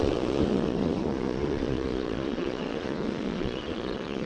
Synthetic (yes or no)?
yes